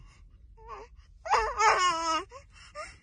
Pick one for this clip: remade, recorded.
recorded